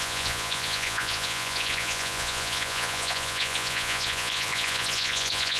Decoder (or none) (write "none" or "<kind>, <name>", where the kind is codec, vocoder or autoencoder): vocoder, Vocos